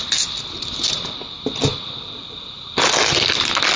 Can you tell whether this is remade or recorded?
recorded